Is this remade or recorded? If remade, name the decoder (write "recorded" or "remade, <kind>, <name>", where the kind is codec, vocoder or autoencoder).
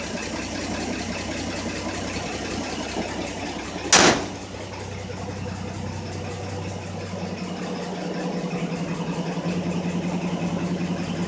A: recorded